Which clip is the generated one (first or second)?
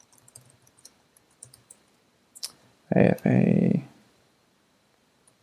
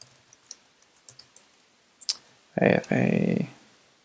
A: first